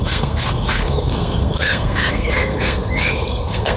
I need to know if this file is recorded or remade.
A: remade